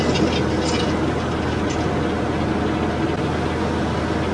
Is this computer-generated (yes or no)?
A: no